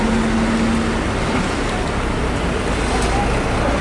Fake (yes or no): no